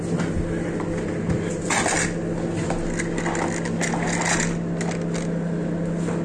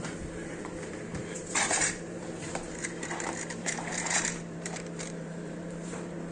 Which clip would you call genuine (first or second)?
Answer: first